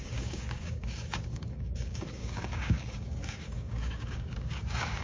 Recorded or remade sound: remade